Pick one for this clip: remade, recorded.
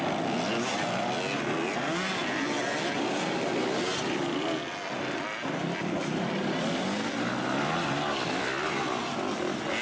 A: recorded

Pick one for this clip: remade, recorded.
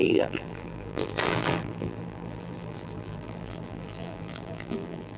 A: remade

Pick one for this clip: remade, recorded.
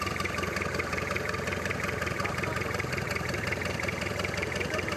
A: remade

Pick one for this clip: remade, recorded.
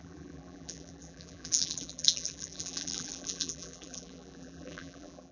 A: remade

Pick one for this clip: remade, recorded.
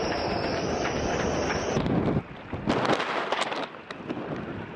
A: recorded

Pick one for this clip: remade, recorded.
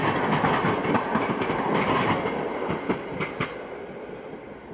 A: recorded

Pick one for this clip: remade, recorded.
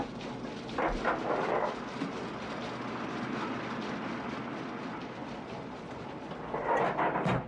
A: recorded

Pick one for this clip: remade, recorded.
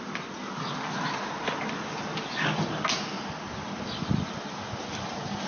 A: recorded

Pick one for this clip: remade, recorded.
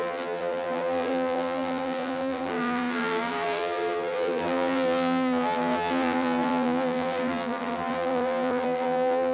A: remade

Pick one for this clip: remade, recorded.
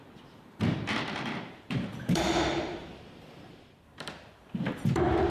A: remade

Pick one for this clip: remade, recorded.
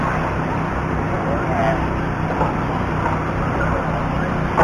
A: recorded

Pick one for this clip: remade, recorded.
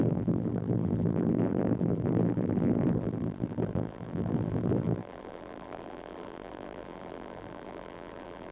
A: remade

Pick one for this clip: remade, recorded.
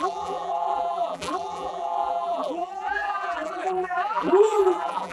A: remade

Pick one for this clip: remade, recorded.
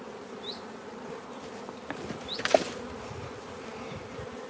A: remade